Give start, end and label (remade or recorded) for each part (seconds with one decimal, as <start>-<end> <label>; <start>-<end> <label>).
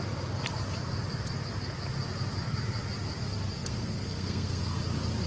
0.0-3.6 recorded; 3.6-4.8 remade; 4.8-5.3 recorded